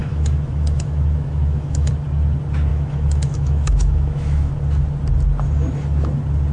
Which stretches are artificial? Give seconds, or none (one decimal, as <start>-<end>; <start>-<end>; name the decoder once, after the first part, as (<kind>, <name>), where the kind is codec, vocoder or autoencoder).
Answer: 0.0-1.9 (autoencoder, DAC-VAE); 2.7-4.5